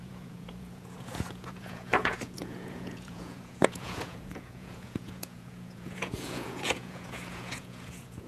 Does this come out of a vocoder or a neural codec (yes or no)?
yes